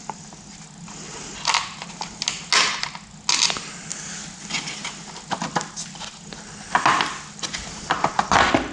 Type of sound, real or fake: real